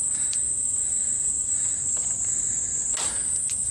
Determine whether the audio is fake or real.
real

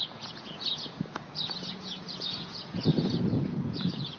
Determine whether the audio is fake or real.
fake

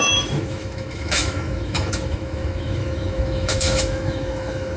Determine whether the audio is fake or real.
fake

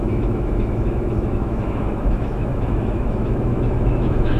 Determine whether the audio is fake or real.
fake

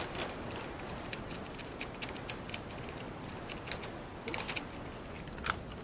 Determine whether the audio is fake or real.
real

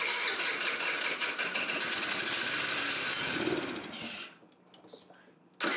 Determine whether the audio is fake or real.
real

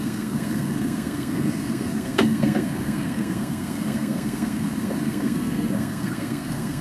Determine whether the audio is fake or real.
fake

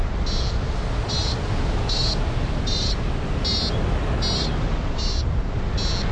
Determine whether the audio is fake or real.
real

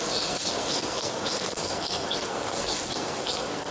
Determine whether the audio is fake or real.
fake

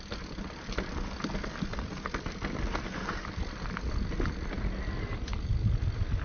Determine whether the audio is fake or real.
real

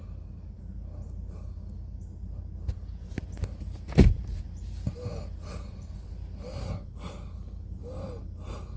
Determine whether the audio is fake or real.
real